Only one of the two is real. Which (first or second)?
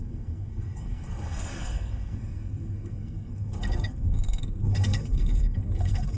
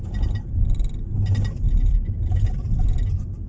second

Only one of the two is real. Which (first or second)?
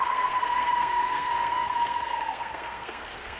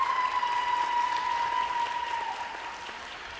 second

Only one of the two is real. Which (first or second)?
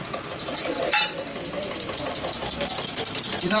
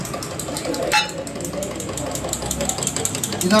second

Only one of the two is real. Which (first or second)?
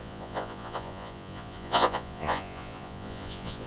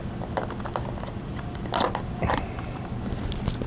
second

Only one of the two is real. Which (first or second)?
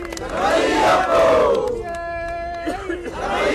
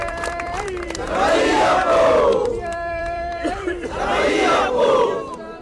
first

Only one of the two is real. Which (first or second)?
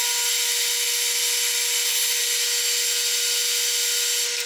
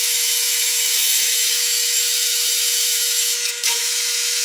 first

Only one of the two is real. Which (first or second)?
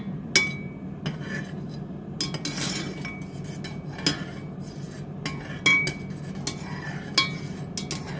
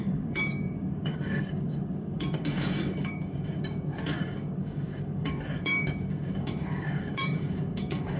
first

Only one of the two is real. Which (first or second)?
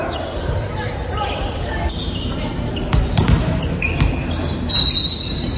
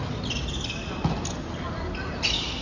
second